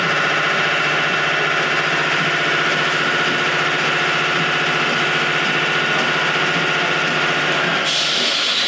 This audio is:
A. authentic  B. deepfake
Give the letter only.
A